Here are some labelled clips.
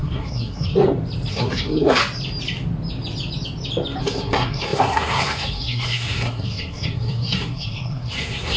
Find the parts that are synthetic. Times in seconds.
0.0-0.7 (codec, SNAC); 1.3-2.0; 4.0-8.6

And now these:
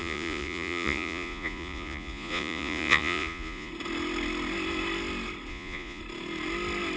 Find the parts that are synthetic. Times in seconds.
0.0-3.7 (vocoder, Vocos); 5.5-6.0

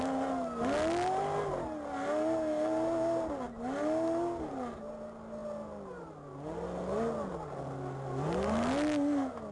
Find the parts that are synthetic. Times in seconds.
none

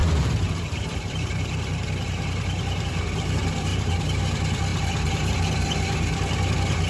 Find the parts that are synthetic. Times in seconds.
0.0-2.9 (vocoder, BigVGAN v2); 3.7-4.2; 4.7-5.3